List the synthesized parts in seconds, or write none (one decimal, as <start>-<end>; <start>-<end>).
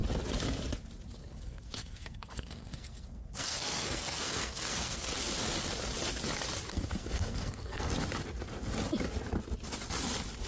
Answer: 1.2-5.1; 6.7-7.9